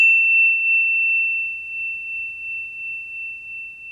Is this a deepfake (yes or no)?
no